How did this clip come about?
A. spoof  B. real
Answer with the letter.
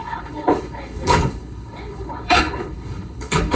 A